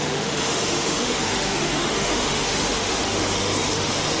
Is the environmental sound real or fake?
fake